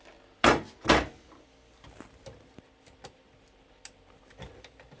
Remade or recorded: recorded